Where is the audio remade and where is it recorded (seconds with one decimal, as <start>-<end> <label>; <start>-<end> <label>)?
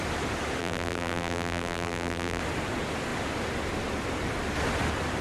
0.0-0.6 recorded; 0.6-2.4 remade; 2.4-5.2 recorded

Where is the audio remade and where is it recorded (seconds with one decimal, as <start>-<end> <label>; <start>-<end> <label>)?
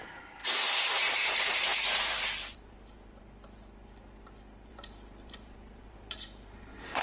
0.0-0.4 recorded; 0.4-3.2 remade; 3.2-4.7 recorded; 4.7-7.0 remade